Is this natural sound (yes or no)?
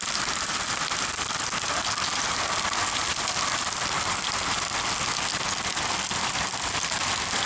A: yes